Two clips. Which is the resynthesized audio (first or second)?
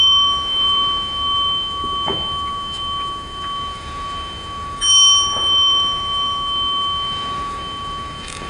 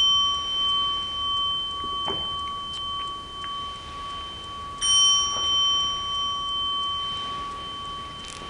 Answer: first